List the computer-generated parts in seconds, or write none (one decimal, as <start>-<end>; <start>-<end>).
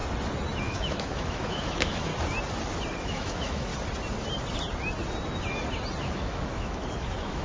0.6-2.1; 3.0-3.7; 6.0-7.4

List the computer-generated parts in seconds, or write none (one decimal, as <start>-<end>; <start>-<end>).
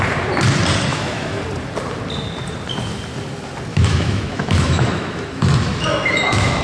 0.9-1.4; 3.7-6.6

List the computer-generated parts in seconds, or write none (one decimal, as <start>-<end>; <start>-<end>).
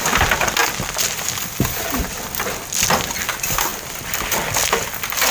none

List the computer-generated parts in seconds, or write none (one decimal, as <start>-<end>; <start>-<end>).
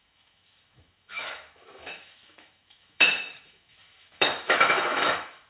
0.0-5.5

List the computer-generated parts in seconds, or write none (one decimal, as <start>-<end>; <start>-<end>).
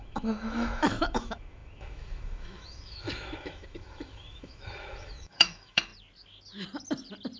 0.0-5.9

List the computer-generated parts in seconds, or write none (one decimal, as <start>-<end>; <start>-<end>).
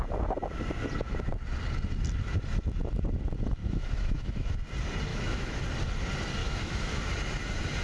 3.6-4.5; 5.1-5.6; 6.4-7.1